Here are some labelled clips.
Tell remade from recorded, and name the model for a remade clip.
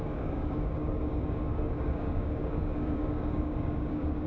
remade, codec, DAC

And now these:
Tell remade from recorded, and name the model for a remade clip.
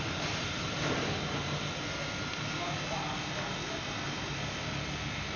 recorded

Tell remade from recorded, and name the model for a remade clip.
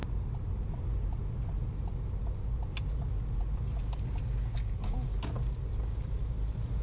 recorded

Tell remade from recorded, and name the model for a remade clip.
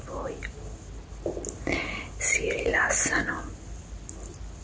recorded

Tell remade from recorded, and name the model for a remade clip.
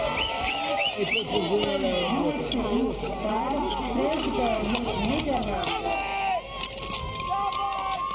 recorded